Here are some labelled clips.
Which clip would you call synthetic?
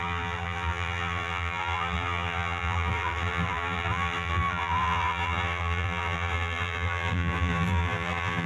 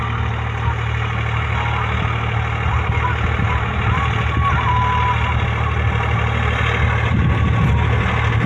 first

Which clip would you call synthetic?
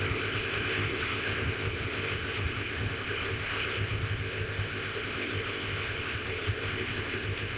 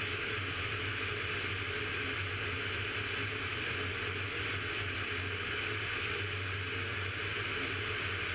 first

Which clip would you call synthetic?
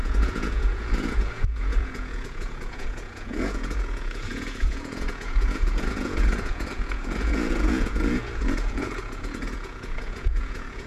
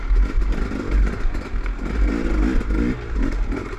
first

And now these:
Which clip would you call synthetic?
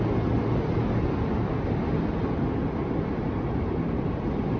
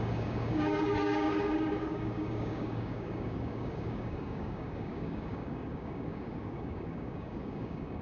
second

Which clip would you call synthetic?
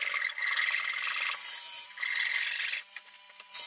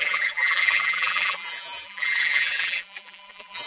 second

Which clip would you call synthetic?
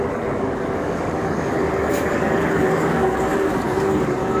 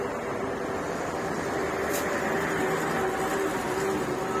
first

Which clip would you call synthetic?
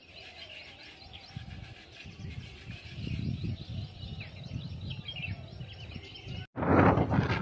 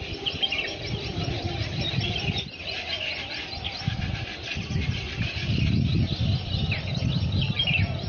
second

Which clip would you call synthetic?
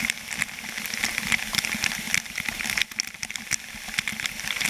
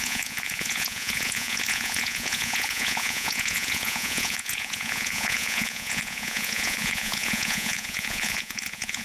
second